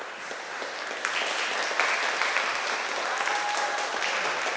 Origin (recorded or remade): recorded